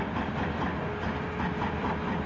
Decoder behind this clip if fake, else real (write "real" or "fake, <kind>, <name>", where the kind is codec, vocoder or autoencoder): real